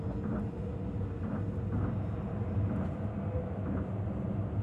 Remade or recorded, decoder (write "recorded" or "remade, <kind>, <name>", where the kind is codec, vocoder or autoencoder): recorded